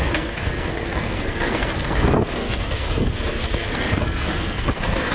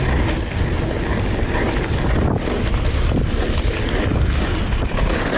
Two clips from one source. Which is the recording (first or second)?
second